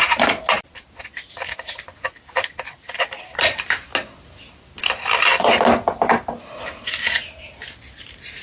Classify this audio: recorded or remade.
recorded